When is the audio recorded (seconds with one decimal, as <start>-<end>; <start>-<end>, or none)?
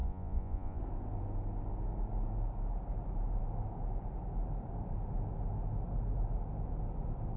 0.8-7.4